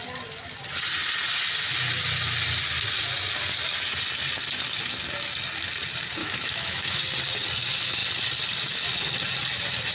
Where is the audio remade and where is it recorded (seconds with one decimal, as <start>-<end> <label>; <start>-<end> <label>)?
0.0-6.2 recorded; 6.2-7.0 remade; 7.0-9.9 recorded